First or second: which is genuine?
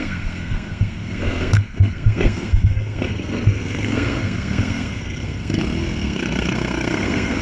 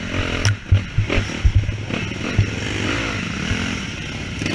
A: second